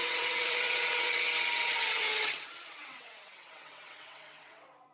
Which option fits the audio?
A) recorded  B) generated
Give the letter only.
B